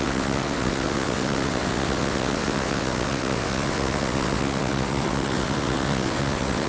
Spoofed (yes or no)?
yes